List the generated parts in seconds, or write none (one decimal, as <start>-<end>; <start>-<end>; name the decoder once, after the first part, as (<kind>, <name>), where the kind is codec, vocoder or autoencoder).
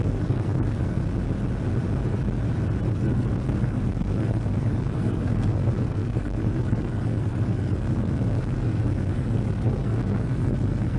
0.0-1.1 (codec, SNAC); 2.9-11.0